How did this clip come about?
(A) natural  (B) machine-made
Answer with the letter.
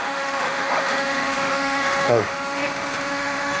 B